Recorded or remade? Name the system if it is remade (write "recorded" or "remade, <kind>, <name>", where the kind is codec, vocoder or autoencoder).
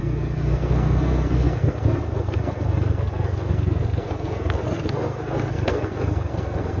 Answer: remade, codec, SNAC